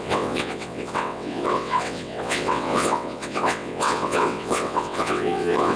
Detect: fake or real fake